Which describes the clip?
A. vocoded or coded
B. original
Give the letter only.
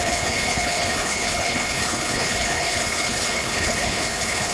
A